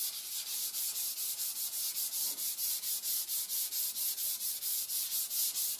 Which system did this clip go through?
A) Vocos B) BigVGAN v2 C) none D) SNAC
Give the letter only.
C